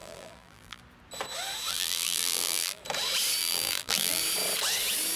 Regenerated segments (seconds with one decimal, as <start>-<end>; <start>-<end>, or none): 0.0-0.8; 1.7-2.8; 3.4-4.2